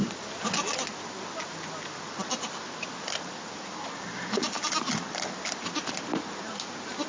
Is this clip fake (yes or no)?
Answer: no